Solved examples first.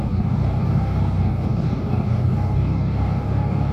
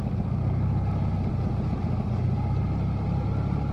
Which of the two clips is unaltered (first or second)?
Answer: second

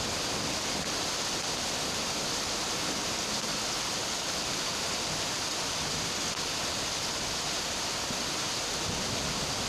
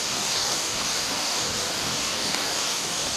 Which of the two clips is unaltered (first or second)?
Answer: first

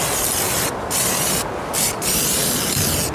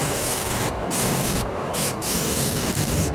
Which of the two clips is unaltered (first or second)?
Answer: first